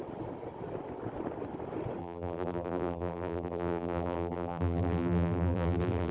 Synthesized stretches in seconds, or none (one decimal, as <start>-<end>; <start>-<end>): 2.0-6.1